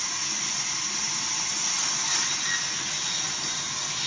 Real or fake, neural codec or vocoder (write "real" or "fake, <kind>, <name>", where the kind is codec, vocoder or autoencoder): real